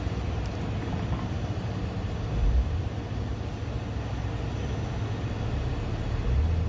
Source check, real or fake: real